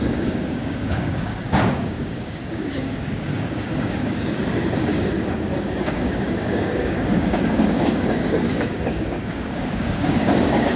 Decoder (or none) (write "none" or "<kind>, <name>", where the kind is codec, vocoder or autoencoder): codec, DAC